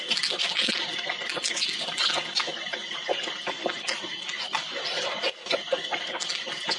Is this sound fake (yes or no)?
no